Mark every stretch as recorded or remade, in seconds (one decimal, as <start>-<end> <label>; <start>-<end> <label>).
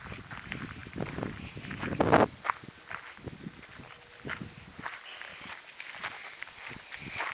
0.0-7.3 recorded